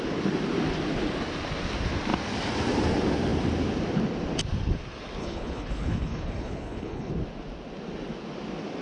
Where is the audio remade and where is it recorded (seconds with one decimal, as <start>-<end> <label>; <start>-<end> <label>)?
0.0-5.2 recorded; 5.2-7.1 remade; 7.1-8.8 recorded